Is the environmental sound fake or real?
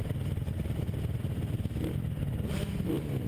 real